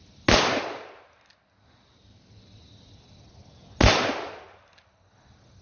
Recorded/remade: recorded